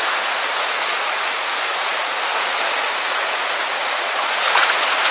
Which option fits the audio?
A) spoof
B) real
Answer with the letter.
A